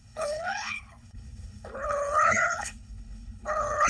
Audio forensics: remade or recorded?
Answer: remade